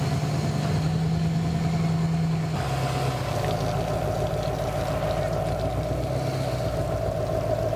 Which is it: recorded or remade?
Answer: recorded